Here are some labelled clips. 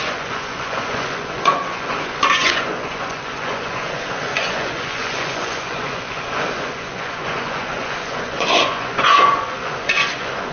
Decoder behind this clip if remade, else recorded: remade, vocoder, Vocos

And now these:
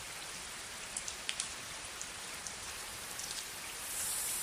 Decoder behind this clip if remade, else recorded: recorded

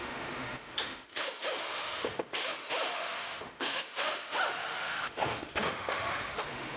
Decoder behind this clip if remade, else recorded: remade, autoencoder, DAC-VAE